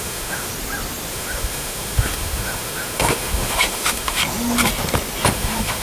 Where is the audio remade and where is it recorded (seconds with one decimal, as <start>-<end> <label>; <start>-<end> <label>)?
0.0-0.5 remade; 0.5-1.1 recorded; 1.1-4.2 remade; 4.2-5.3 recorded; 5.3-5.8 remade